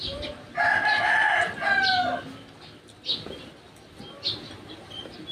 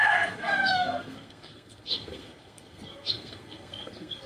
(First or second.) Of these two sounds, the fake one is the second